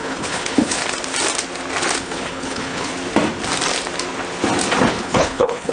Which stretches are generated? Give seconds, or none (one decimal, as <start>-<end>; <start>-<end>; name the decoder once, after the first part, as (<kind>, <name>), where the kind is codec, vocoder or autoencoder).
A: 0.0-0.8 (codec, HILCodec); 2.0-2.9; 4.9-5.7